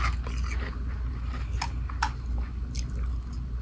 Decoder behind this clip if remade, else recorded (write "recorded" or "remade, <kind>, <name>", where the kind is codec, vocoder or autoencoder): recorded